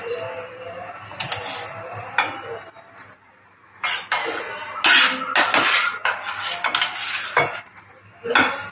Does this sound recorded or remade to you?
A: recorded